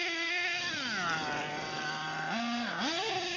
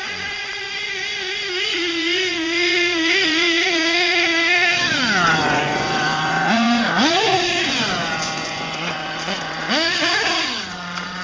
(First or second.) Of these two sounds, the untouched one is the first